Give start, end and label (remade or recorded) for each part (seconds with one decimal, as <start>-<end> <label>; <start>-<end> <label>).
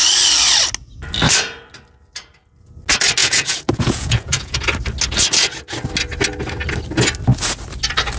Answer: 0.0-3.2 recorded; 3.2-4.6 remade; 4.6-8.2 recorded